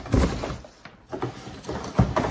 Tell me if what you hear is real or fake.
real